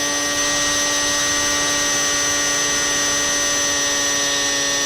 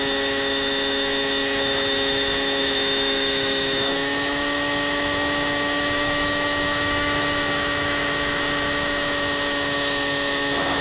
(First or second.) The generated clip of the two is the second